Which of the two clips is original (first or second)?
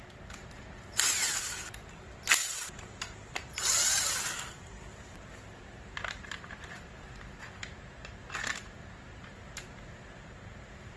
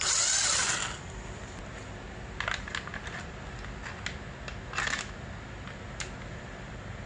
second